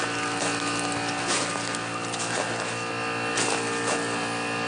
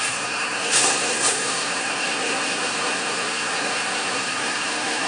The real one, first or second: first